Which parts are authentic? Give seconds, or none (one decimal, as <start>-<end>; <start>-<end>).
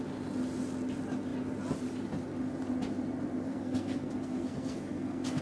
0.0-3.5